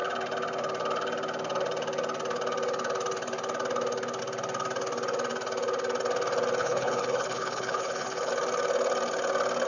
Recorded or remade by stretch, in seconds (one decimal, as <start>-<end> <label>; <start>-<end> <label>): 0.0-6.6 recorded; 6.6-8.3 remade; 8.3-9.7 recorded